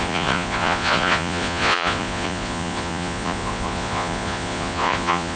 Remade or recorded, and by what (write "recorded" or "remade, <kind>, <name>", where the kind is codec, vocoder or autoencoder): remade, vocoder, Vocos